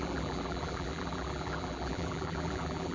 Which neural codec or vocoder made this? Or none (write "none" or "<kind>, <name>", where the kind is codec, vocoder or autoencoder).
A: vocoder, BigVGAN v2